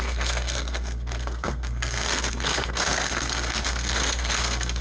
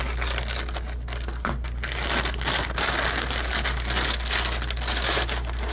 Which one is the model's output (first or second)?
first